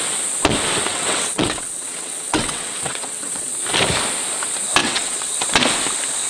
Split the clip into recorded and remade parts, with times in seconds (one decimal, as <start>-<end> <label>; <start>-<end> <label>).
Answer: 0.0-0.9 recorded; 0.9-3.5 remade; 3.5-4.8 recorded; 4.8-5.4 remade; 5.4-6.3 recorded